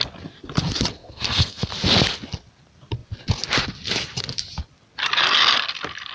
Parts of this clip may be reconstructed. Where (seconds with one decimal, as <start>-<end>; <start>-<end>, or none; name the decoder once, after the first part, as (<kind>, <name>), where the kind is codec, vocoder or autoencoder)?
1.0-1.7 (codec, SNAC)